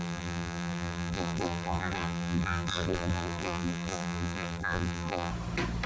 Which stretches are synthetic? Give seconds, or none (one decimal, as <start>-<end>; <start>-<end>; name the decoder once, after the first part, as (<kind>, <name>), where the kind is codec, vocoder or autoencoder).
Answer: 0.0-5.3 (vocoder, BigVGAN v2)